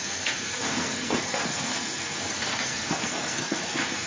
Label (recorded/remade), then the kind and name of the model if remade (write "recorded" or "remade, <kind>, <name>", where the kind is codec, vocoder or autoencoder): remade, codec, SNAC